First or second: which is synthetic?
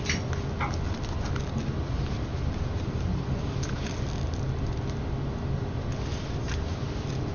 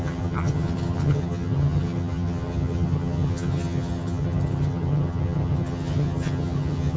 second